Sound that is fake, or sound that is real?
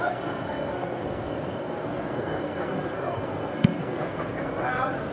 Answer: fake